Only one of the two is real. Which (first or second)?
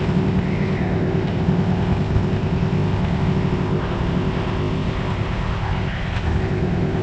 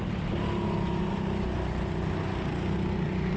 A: second